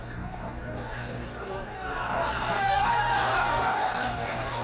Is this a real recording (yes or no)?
no